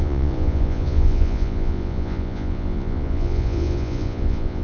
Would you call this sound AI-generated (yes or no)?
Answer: yes